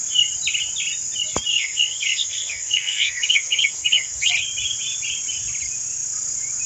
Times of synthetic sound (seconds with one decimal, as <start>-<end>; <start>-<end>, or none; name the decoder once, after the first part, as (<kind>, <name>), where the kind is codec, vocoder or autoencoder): 1.5-4.3 (codec, SNAC)